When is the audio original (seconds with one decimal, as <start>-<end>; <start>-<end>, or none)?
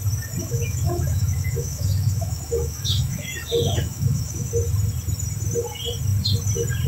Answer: 0.0-0.4; 4.5-6.9